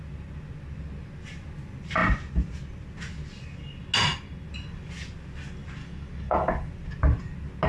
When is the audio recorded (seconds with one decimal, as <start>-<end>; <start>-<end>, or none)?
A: 0.0-5.8; 6.7-7.7